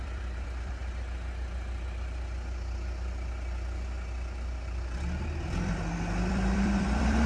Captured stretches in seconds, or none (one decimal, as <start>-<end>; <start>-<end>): 0.8-5.2